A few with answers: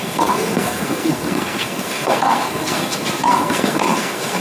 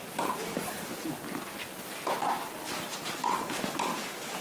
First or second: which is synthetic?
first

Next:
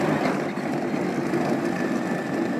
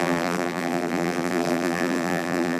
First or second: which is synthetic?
second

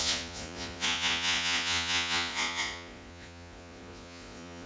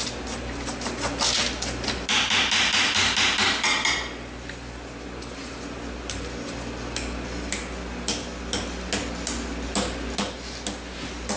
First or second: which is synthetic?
first